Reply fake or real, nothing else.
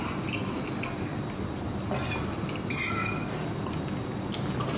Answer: real